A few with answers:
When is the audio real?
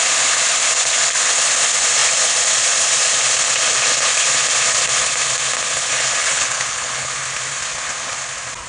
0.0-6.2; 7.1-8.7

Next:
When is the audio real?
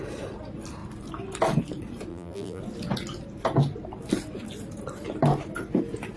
0.0-2.1; 2.6-6.2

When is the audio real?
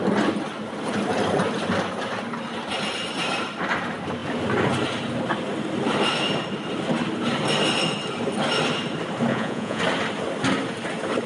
0.0-9.3; 9.8-11.3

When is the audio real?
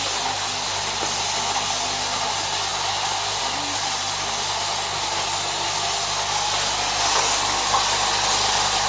0.0-8.9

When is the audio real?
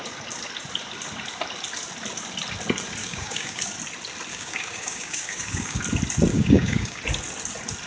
0.0-3.0; 3.6-4.3; 5.8-6.3; 7.0-7.9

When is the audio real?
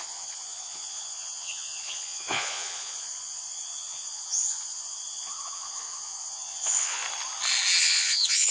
7.0-7.8